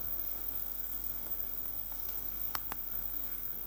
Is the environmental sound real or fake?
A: fake